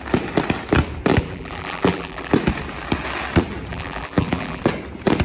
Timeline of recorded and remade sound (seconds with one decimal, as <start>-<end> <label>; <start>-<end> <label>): 0.0-1.1 recorded; 1.1-2.3 remade; 2.3-3.7 recorded; 3.7-4.6 remade; 4.6-5.2 recorded